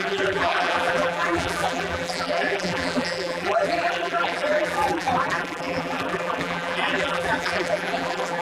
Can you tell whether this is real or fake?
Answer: fake